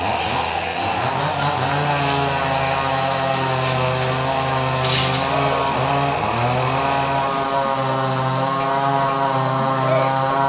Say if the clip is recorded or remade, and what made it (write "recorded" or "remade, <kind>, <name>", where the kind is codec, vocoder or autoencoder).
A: recorded